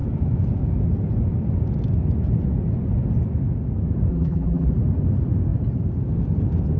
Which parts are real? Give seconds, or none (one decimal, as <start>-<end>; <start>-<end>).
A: 0.0-4.1; 4.7-6.8